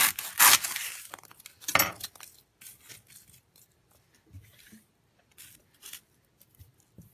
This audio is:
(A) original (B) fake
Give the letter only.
A